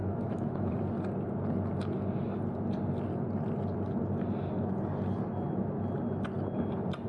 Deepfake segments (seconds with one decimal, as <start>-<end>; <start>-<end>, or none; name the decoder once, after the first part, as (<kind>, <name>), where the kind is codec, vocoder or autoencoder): 0.0-0.7 (autoencoder, DAC-VAE)